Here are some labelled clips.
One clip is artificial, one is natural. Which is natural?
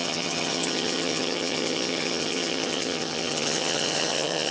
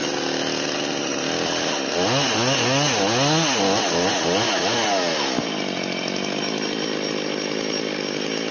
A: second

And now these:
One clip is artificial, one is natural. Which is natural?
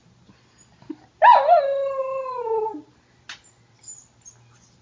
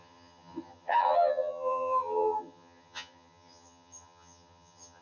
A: first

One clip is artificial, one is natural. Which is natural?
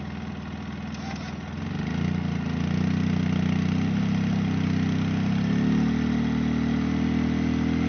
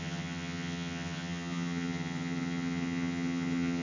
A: first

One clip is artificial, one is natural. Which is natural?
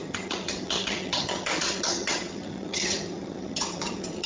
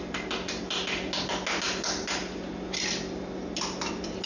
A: second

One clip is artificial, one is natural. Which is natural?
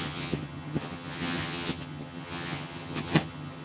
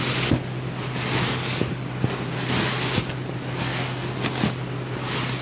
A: second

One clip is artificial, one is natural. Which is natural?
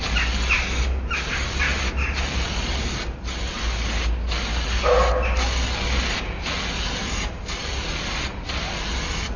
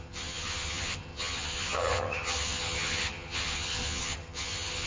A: first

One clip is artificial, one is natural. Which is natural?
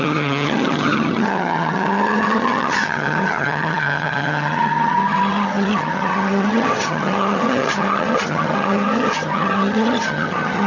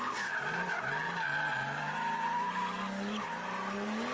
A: second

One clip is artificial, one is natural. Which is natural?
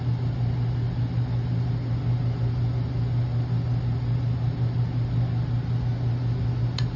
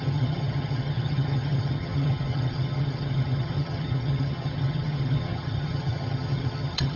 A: first